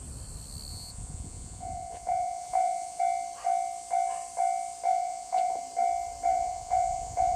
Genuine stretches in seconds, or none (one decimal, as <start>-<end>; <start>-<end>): 0.0-0.7; 3.0-4.9; 5.6-6.3